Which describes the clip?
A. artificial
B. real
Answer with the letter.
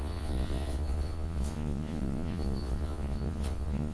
A